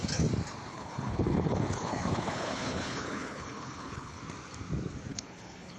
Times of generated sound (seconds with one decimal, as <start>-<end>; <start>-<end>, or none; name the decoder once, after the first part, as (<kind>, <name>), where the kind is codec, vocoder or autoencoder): 0.7-4.2 (codec, HILCodec); 5.1-5.8